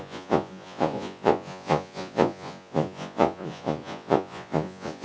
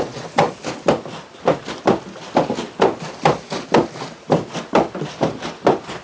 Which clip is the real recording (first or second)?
second